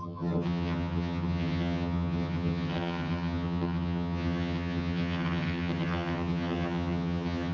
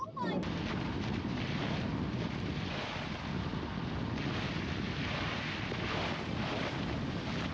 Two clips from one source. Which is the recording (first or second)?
second